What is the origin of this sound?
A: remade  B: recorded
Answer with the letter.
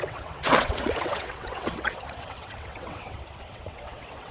A